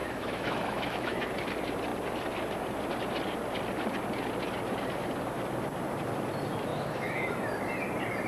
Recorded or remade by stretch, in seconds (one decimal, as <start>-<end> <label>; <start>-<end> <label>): 0.0-1.3 remade; 1.3-6.7 recorded; 6.7-7.3 remade; 7.3-8.3 recorded